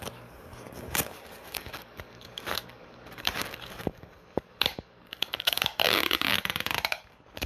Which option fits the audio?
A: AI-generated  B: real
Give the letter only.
A